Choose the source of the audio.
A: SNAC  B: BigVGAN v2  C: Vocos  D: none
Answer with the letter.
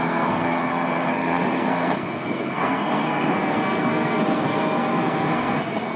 A